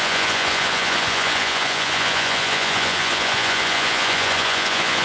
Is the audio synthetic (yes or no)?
yes